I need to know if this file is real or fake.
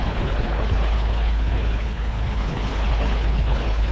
fake